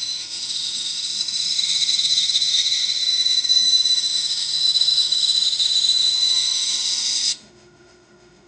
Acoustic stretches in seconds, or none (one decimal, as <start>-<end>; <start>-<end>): none